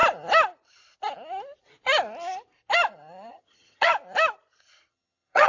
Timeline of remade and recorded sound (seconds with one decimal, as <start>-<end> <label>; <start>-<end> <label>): 0.0-3.3 recorded; 3.3-3.9 remade; 3.9-4.9 recorded; 4.9-5.5 remade